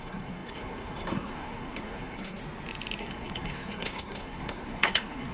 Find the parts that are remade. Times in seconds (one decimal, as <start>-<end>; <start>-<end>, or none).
0.0-2.4; 3.0-5.3